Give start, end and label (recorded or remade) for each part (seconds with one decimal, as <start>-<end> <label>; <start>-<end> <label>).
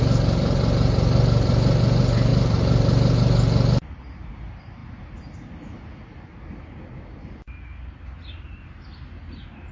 0.0-9.7 recorded